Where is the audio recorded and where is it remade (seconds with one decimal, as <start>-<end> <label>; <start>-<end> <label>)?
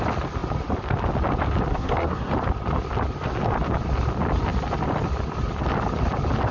0.0-1.7 recorded; 1.7-2.3 remade; 2.3-6.5 recorded